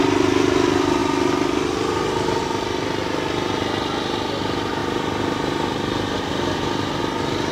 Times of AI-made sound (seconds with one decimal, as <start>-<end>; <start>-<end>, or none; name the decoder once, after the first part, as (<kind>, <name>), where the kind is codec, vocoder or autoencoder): none